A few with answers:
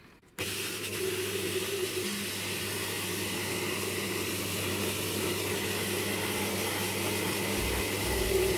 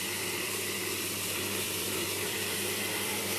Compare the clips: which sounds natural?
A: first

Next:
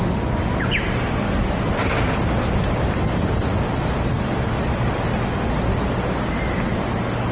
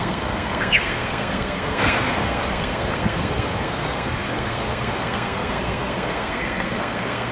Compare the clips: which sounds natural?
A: first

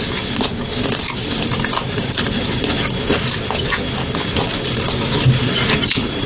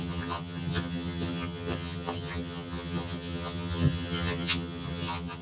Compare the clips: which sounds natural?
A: first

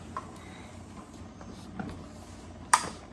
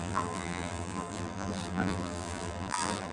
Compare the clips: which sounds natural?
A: first